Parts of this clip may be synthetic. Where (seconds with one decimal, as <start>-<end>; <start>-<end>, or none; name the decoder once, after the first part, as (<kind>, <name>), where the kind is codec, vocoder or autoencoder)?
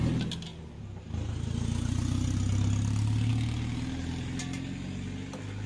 none